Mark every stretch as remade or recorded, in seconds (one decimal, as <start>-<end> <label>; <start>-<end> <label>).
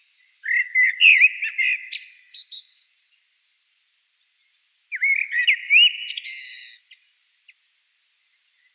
0.0-5.1 remade; 5.1-6.5 recorded; 6.5-8.7 remade